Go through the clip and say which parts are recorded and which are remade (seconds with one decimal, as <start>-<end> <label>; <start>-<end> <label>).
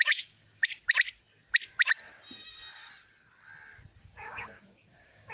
0.0-0.8 remade; 0.8-4.0 recorded; 4.0-5.3 remade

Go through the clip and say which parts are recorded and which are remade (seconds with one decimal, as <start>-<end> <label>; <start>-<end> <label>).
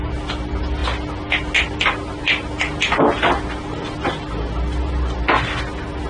0.0-6.1 recorded